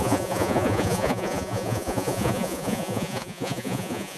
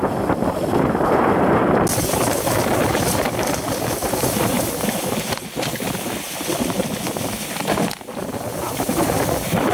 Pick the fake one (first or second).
first